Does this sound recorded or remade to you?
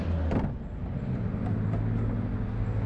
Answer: recorded